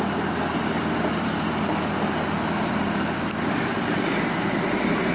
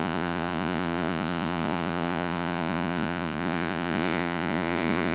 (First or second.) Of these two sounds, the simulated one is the second